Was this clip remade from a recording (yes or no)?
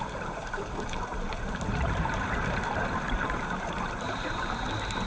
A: yes